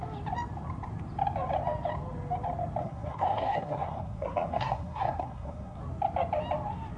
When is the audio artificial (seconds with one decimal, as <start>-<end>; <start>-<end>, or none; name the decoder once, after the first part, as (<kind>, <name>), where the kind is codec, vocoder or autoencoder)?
2.8-5.8 (codec, SNAC)